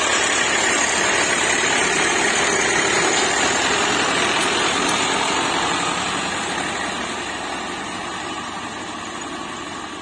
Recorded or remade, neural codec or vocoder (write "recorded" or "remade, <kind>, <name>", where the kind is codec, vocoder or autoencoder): recorded